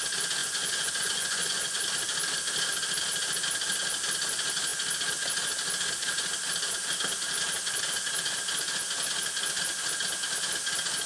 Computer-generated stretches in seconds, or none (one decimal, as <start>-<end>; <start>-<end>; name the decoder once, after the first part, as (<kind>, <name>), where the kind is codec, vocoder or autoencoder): 0.4-1.8 (vocoder, Vocos)